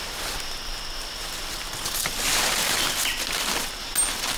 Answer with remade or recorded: recorded